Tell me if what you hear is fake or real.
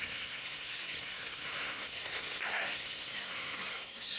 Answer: fake